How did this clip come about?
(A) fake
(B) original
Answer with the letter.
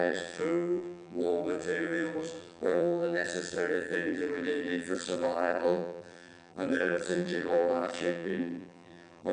A